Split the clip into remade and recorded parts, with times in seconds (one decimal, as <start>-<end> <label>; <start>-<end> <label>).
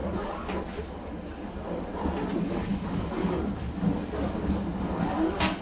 0.0-1.9 remade; 1.9-2.4 recorded; 2.4-5.6 remade